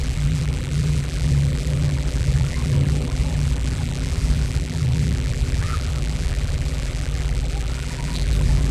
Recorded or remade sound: remade